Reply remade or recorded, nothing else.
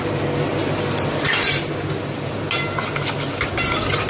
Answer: recorded